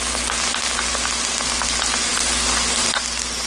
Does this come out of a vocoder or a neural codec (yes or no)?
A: no